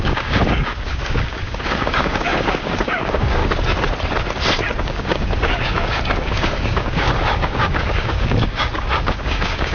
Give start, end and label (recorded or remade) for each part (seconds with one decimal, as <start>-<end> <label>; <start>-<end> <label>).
0.0-3.4 remade; 3.4-4.8 recorded; 4.8-9.7 remade